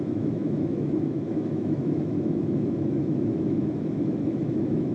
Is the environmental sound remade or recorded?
remade